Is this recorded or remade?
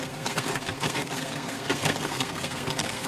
remade